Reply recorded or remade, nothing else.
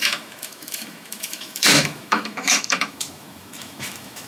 remade